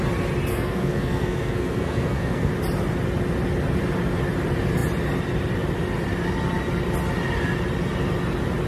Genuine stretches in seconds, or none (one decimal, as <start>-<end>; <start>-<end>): 0.0-0.5; 2.5-8.7